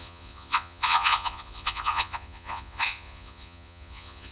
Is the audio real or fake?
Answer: fake